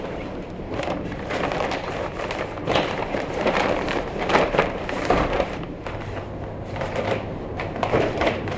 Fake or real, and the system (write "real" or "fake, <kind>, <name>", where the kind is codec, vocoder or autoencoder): fake, vocoder, BigVGAN v2